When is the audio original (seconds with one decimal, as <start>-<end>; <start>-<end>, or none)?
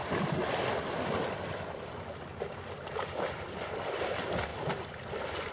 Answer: 0.0-5.5